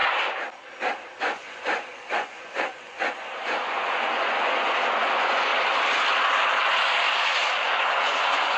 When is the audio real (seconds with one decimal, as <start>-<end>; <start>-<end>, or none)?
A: 0.0-1.2; 5.5-7.5